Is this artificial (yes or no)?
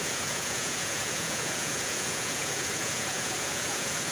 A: yes